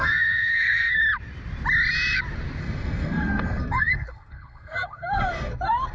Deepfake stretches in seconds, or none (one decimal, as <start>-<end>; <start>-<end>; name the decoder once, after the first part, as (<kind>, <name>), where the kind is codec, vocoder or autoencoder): 0.0-1.0 (codec, SNAC); 2.6-5.9